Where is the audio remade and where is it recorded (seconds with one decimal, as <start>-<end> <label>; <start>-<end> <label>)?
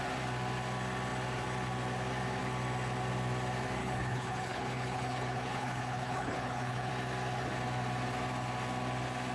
0.0-3.8 recorded; 3.8-6.9 remade; 6.9-9.3 recorded